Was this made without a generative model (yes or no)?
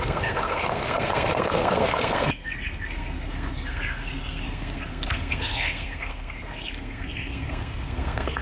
no